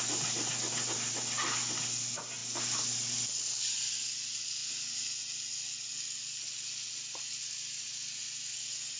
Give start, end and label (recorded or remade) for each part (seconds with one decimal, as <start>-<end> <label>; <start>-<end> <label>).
0.0-9.0 recorded